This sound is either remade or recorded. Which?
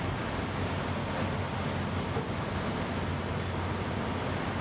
recorded